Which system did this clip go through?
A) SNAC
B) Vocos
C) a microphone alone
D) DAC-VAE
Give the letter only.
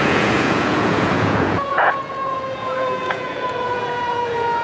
B